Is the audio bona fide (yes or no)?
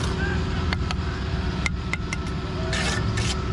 yes